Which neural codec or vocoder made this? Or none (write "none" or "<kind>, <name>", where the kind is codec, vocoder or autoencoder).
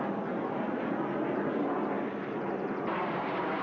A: none